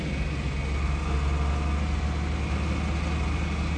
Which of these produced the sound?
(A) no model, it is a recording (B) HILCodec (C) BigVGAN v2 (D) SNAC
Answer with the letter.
A